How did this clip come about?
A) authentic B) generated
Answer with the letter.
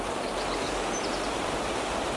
A